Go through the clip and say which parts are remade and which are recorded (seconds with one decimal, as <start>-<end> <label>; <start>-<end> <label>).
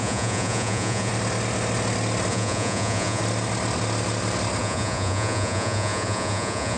0.0-1.1 remade; 1.1-2.3 recorded; 2.3-3.2 remade; 3.2-4.6 recorded; 4.6-6.8 remade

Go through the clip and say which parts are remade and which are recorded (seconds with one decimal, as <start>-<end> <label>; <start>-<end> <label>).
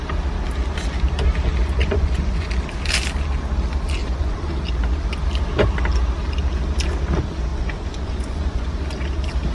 0.0-1.8 recorded; 1.8-2.5 remade; 2.5-4.0 recorded; 4.0-4.5 remade; 4.5-7.5 recorded; 7.5-8.7 remade; 8.7-9.5 recorded